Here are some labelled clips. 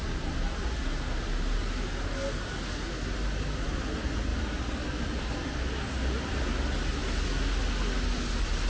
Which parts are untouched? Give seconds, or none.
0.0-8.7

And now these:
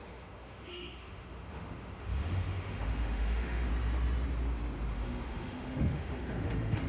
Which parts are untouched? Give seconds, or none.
3.7-4.9

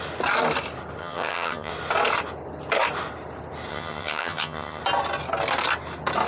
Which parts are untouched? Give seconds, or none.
0.0-1.0; 1.7-3.7; 4.8-6.3

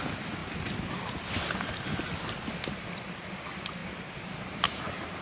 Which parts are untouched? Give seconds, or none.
0.0-5.2

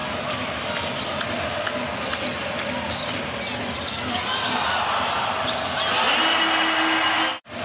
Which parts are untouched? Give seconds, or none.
0.0-7.6

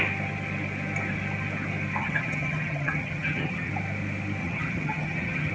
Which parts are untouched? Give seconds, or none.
0.0-2.0; 3.7-4.4

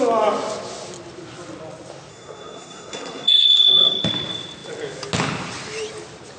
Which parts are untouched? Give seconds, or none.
0.0-2.1; 4.0-6.4

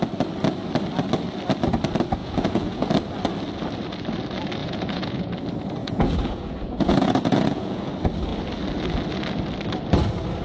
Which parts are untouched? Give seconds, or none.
0.0-2.2; 2.9-4.6; 5.3-5.8; 7.9-10.4